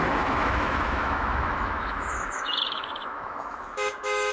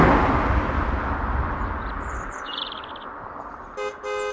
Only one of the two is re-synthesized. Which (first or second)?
first